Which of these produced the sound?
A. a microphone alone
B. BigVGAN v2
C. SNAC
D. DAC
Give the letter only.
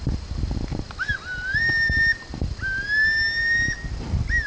A